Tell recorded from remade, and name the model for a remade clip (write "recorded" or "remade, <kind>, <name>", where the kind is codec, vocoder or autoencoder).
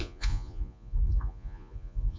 remade, vocoder, Vocos